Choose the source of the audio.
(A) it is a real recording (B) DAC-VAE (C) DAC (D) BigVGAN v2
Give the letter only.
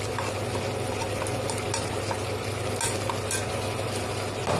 A